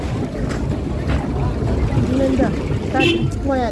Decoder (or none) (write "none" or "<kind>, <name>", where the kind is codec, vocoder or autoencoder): none